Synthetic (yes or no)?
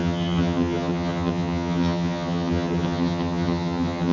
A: yes